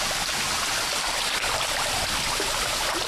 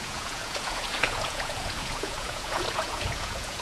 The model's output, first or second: second